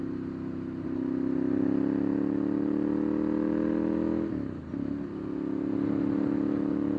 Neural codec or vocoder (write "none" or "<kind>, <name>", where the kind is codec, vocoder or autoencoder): none